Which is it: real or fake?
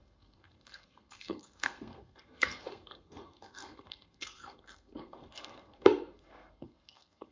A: fake